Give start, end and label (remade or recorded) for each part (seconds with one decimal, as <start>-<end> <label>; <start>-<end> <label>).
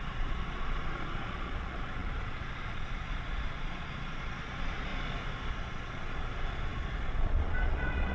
0.0-4.9 remade; 4.9-5.5 recorded; 5.5-8.1 remade